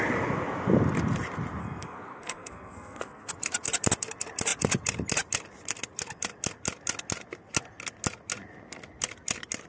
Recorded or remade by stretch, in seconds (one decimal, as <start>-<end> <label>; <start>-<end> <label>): 0.0-1.6 recorded; 1.6-3.3 remade; 3.3-9.7 recorded